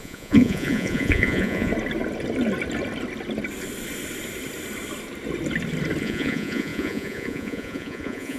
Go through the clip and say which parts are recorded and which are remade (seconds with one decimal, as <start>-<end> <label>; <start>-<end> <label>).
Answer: 0.0-1.7 remade; 1.7-6.0 recorded; 6.0-8.4 remade